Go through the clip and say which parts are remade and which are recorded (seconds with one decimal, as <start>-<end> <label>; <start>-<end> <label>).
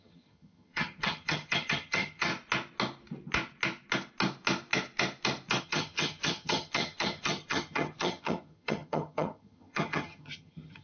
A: 0.0-2.3 remade; 2.3-5.6 recorded; 5.6-10.8 remade